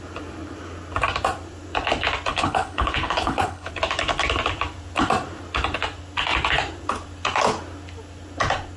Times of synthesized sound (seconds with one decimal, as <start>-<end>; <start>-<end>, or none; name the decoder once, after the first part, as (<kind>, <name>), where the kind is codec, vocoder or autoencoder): 2.3-3.7 (codec, HILCodec)